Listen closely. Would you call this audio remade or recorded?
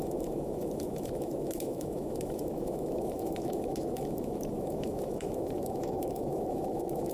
remade